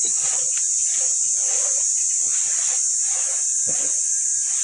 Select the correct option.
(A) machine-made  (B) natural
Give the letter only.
B